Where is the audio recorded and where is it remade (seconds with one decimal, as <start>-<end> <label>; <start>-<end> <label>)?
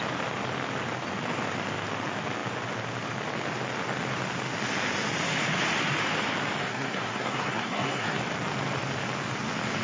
0.0-6.6 recorded; 6.6-8.2 remade; 8.2-9.8 recorded